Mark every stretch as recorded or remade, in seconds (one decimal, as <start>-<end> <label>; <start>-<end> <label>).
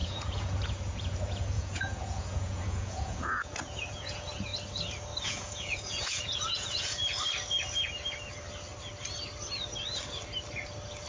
0.0-4.5 remade; 4.5-5.2 recorded; 5.2-7.0 remade; 7.0-11.1 recorded